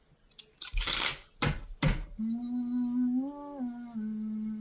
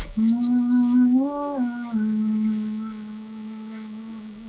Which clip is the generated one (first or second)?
second